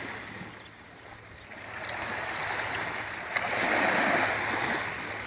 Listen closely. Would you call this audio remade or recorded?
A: recorded